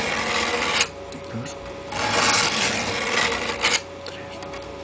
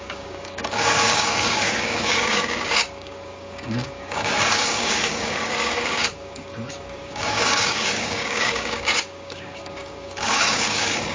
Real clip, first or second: first